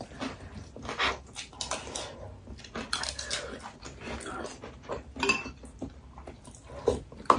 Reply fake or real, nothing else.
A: real